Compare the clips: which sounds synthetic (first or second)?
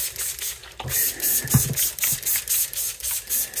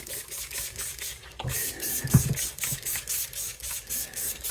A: second